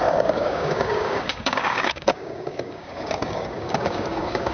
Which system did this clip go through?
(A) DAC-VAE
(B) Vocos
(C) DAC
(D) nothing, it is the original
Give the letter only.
C